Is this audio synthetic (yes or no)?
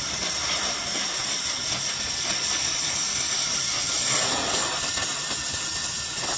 no